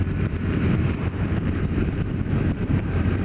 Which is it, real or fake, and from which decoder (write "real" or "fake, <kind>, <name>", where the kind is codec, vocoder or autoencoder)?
fake, vocoder, BigVGAN v2